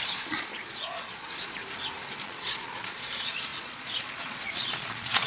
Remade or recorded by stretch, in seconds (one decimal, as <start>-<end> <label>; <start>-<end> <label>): 0.0-1.6 remade; 1.6-2.2 recorded; 2.2-5.3 remade